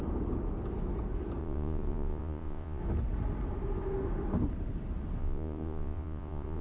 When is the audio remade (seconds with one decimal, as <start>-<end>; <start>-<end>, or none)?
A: 1.4-2.8; 5.2-6.6